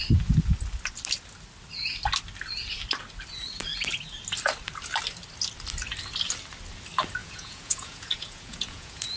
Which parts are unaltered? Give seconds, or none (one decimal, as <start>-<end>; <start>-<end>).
0.0-7.2